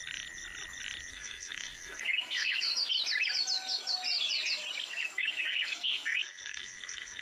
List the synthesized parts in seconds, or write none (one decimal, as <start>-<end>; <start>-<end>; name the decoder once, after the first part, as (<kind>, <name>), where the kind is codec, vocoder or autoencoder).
1.1-2.7 (codec, SNAC); 4.8-7.2